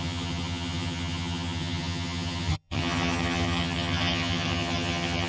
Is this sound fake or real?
fake